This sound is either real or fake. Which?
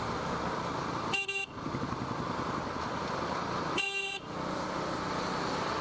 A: real